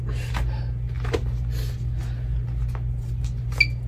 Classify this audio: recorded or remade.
recorded